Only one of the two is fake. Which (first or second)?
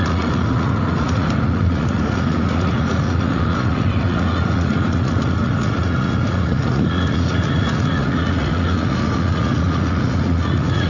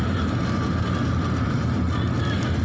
first